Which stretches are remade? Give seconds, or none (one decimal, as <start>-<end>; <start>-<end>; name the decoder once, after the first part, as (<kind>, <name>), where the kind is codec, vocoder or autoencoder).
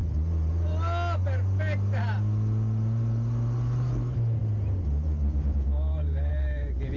none